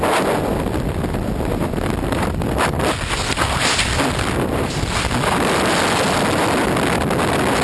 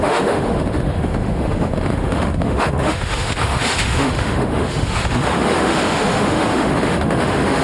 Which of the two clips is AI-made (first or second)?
second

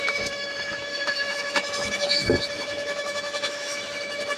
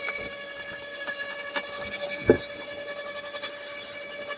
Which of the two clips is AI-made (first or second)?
first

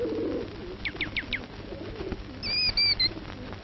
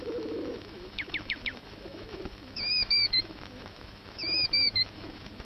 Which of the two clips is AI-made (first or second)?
second